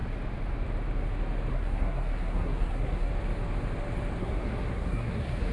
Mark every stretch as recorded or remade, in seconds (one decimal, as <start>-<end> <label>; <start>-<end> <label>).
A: 0.0-1.5 recorded; 1.5-3.1 remade; 3.1-4.2 recorded; 4.2-5.5 remade

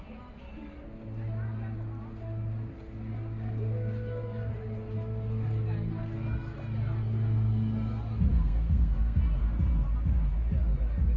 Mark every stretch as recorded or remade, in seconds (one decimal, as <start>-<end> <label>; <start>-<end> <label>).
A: 0.0-8.3 recorded; 8.3-9.2 remade; 9.2-11.2 recorded

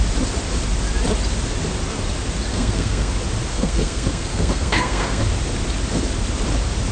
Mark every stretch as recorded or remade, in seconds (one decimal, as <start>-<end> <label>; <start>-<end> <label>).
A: 0.0-2.5 recorded; 2.5-3.1 remade; 3.1-3.5 recorded; 3.5-5.2 remade; 5.2-6.9 recorded

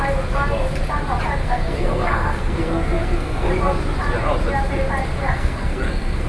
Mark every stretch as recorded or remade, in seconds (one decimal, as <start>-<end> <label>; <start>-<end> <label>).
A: 0.0-1.4 recorded; 1.4-3.5 remade; 3.5-5.2 recorded; 5.2-6.3 remade